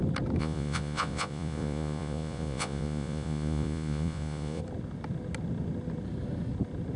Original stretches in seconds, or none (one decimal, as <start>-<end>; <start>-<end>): 0.0-0.4; 4.6-7.0